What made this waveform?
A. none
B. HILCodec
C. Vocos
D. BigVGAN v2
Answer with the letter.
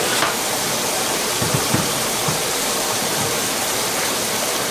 D